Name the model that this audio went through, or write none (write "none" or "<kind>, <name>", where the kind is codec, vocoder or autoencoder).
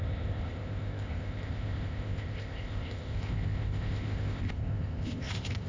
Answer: codec, ZipCodec